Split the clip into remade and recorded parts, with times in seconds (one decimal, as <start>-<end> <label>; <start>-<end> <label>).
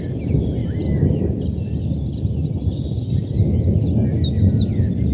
0.0-5.1 recorded